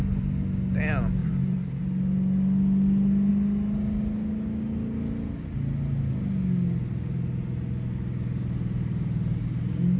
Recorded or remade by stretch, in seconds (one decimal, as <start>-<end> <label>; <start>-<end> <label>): 0.0-1.2 recorded; 1.2-1.8 remade; 1.8-10.0 recorded